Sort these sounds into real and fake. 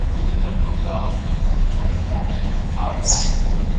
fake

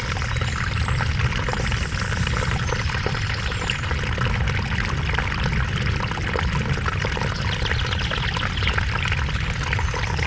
real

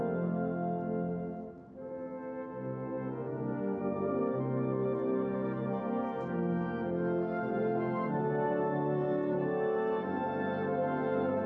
real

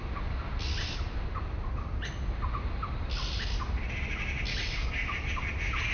real